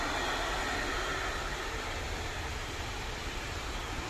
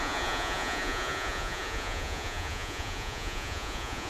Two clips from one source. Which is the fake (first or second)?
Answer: second